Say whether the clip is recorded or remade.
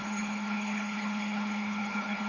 remade